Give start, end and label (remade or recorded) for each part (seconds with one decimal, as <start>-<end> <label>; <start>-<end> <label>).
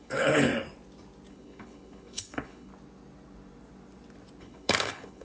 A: 0.0-0.5 remade; 0.5-1.3 recorded; 1.3-2.7 remade; 2.7-4.4 recorded; 4.4-5.2 remade